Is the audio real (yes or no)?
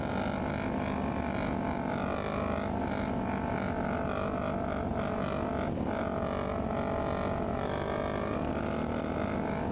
yes